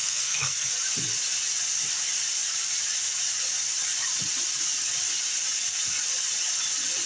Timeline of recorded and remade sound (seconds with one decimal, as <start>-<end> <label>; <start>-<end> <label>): 0.0-0.7 remade; 0.7-7.1 recorded